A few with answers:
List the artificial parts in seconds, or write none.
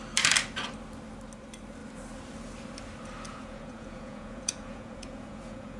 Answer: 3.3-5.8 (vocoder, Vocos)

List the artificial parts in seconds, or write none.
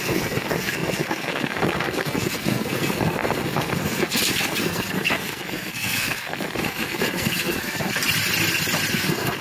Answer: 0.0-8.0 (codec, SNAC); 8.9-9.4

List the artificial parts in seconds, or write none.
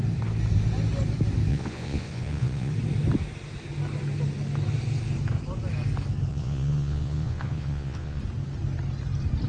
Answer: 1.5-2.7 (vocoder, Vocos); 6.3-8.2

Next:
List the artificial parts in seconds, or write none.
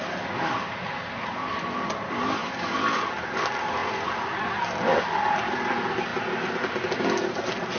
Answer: 3.8-4.4 (vocoder, BigVGAN v2)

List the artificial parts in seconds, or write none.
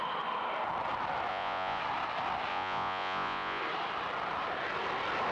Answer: 1.3-1.8 (vocoder, Vocos); 2.5-3.6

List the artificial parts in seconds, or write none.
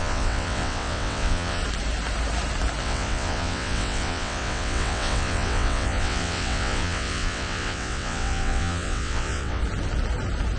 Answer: 0.0-1.6 (vocoder, WaveNeXt); 2.8-9.6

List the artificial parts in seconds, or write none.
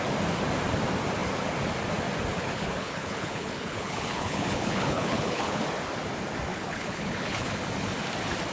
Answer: 2.3-5.6 (codec, HILCodec); 6.5-7.6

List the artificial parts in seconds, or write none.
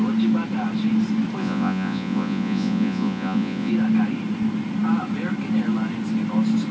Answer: 1.4-3.7 (vocoder, Vocos)